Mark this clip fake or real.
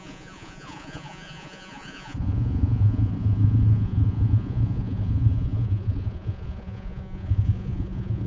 fake